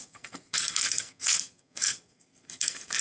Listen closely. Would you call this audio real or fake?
fake